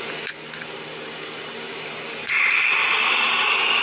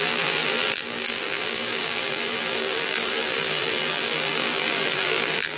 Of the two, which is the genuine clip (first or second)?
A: first